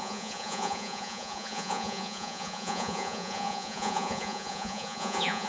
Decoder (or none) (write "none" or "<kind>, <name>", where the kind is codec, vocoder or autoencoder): vocoder, Vocos